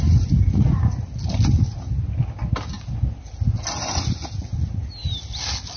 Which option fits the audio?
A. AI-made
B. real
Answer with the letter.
B